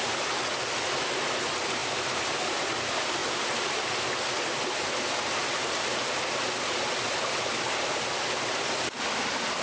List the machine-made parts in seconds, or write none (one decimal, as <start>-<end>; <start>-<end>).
1.8-2.6; 3.2-3.9